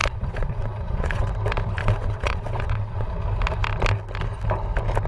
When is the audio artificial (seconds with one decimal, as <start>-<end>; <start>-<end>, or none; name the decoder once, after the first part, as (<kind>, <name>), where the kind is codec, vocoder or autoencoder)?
0.0-1.3 (vocoder, WaveNeXt); 1.8-3.1